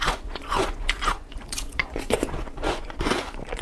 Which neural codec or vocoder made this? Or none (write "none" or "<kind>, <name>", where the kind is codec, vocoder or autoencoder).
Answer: vocoder, Vocos